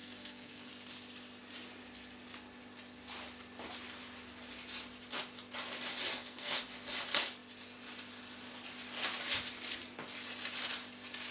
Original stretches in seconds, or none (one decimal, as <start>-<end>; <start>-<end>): 0.7-6.1; 6.6-11.3